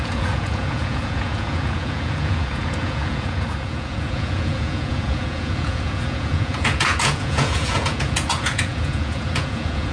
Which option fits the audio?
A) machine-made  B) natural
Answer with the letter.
A